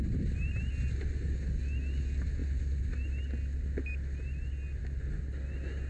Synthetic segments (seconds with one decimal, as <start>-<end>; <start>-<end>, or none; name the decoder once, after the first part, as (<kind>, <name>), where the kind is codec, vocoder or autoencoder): none